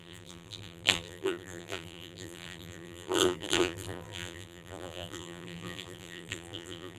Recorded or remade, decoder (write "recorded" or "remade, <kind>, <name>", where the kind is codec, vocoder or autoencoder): remade, vocoder, BigVGAN v2